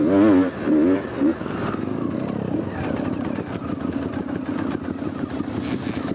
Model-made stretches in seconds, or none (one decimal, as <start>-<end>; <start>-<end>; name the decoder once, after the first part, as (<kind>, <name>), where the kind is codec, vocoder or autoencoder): none